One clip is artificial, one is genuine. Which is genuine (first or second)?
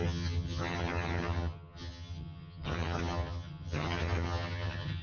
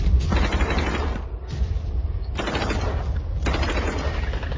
second